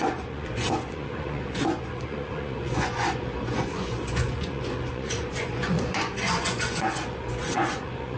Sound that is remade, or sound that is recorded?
remade